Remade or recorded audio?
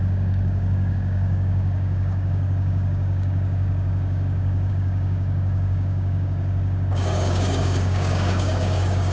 remade